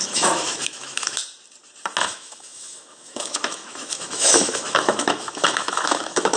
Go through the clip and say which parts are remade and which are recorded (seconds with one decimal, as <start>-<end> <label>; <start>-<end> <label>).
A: 0.0-1.2 remade; 1.2-2.0 recorded; 2.0-6.4 remade